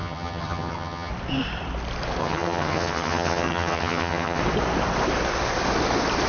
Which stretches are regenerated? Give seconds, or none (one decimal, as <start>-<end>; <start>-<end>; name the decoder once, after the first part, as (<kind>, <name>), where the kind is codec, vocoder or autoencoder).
0.0-1.1 (vocoder, HiFi-GAN); 2.2-4.4